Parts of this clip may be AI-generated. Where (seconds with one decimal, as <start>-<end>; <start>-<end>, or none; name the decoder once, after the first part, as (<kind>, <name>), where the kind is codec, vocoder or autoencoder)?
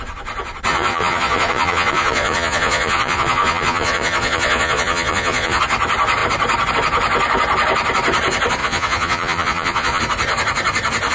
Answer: 0.7-5.6 (vocoder, Vocos); 8.6-10.0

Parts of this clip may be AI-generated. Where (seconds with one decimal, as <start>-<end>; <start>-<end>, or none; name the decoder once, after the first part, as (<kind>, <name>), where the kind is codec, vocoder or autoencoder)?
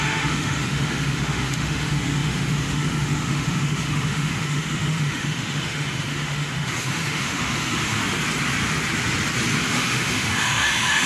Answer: 0.0-8.0 (autoencoder, DAC-VAE); 9.7-11.1